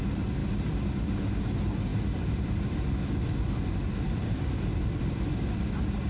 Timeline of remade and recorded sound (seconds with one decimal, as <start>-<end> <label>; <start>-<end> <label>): 0.0-1.9 recorded; 1.9-5.6 remade; 5.6-6.1 recorded